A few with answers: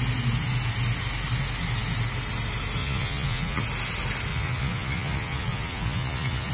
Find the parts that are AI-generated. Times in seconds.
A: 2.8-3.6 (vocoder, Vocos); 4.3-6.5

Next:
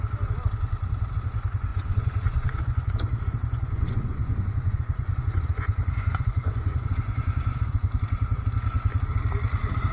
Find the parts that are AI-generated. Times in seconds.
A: 1.7-2.9 (vocoder, Vocos); 3.4-8.0